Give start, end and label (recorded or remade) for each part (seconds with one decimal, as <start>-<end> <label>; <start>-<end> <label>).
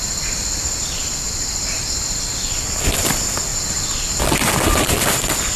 0.0-3.5 remade; 3.5-4.2 recorded; 4.2-5.6 remade